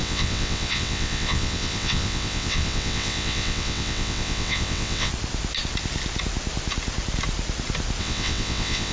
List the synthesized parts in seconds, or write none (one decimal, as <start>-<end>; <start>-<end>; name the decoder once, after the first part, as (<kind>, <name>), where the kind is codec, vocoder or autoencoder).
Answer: 0.0-5.1 (vocoder, WaveNeXt); 8.0-8.9